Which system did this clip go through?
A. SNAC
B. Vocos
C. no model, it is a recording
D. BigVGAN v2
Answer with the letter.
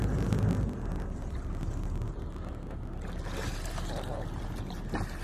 C